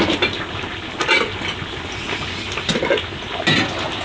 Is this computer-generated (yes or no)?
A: no